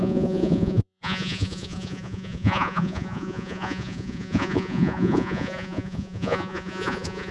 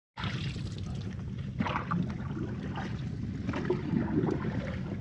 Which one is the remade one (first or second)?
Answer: first